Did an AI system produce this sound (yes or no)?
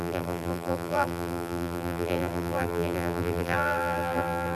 yes